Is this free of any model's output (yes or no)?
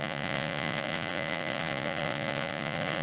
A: no